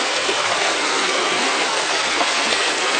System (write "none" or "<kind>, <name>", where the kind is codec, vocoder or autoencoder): codec, SNAC